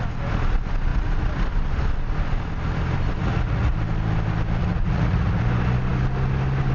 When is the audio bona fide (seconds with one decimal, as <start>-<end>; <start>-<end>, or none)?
0.0-3.2; 3.7-4.6; 5.4-6.7